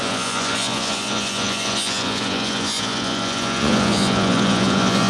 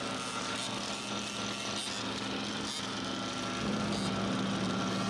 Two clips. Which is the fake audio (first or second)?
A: first